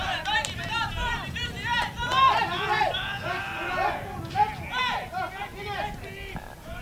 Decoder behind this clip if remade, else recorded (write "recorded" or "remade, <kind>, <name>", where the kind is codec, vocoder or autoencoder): recorded